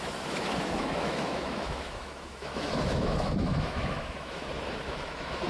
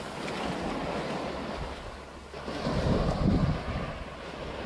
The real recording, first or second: second